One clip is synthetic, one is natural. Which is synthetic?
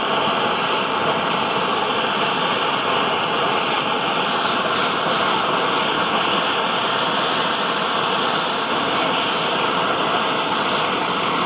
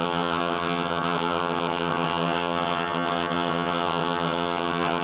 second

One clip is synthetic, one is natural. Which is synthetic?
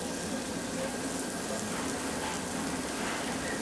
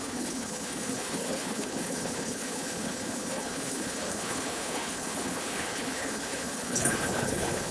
second